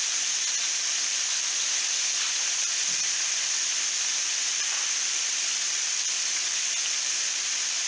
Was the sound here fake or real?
fake